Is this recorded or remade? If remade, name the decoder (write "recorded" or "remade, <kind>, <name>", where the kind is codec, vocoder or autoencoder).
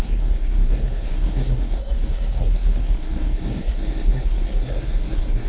remade, codec, SNAC